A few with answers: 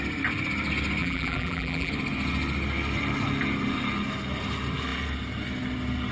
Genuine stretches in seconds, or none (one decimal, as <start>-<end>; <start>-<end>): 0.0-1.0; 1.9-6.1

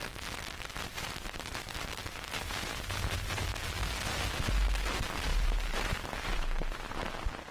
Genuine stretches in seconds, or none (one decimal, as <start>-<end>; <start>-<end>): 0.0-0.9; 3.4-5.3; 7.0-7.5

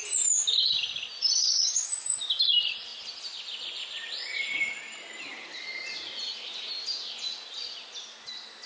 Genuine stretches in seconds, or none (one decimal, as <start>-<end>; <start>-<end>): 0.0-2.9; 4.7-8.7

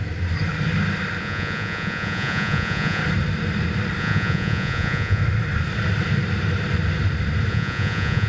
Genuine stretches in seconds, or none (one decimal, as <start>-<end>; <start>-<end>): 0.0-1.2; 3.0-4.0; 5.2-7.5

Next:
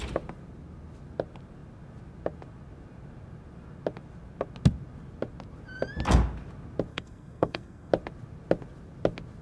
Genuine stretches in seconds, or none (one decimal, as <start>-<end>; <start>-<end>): 0.0-6.9; 7.9-9.4

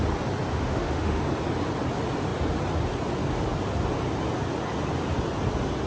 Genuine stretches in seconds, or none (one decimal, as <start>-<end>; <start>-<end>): 0.0-0.5; 1.2-5.9

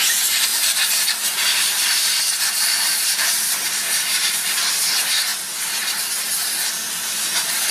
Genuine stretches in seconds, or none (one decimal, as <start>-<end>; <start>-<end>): 0.0-0.5; 4.8-7.7

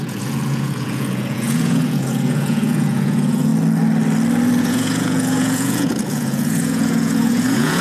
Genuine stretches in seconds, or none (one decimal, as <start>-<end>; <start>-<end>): 3.5-4.6